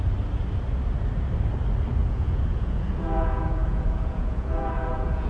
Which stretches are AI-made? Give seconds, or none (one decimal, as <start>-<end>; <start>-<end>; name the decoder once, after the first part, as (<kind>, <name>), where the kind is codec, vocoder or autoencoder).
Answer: 2.0-5.3 (vocoder, Vocos)